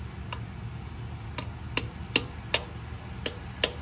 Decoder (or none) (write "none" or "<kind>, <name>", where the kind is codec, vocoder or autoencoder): none